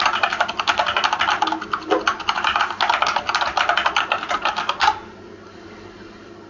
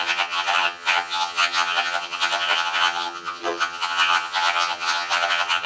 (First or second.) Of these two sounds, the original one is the first